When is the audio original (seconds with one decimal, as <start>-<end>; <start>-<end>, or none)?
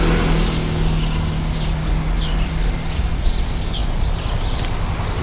0.0-5.2